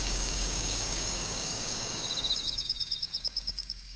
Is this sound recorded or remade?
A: remade